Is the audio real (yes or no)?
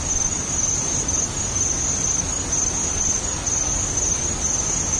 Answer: yes